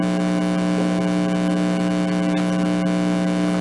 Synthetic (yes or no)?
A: no